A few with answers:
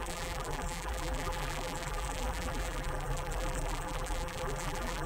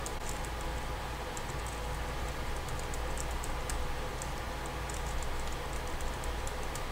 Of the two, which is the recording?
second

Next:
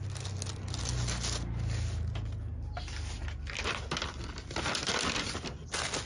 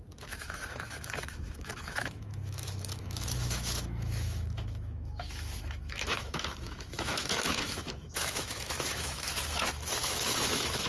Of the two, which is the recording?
first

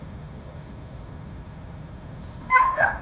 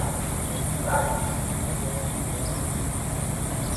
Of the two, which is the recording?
second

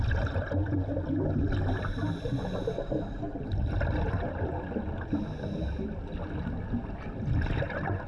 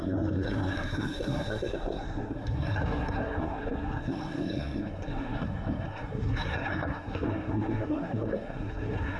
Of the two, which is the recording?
first